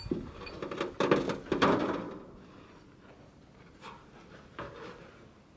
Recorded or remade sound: recorded